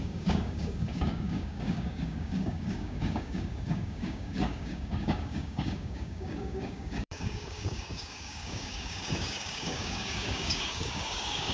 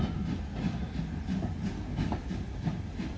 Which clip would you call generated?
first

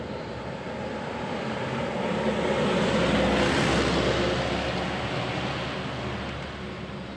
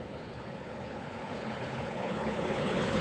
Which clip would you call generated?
second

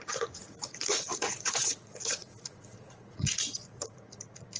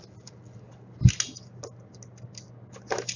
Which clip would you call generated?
first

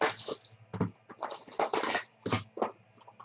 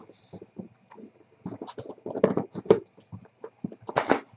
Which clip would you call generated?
second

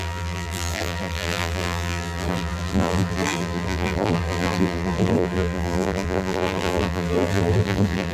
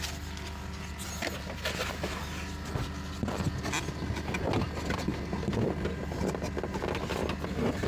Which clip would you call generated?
first